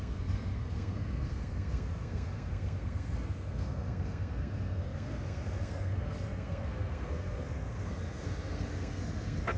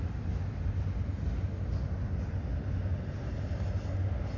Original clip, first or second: second